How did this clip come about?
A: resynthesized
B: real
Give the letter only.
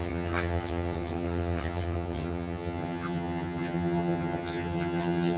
A